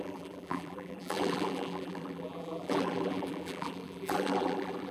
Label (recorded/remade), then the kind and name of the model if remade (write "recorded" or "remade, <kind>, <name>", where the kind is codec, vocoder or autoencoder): remade, vocoder, BigVGAN v2